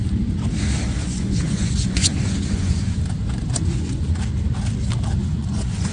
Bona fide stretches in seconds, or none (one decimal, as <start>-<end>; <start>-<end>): 0.0-1.0; 4.2-5.2